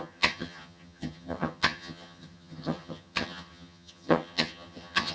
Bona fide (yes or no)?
no